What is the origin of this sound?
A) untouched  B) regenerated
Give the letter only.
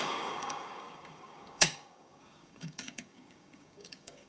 B